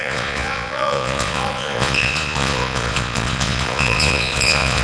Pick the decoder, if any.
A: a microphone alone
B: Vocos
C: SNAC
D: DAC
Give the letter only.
B